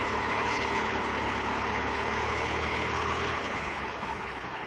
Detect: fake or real fake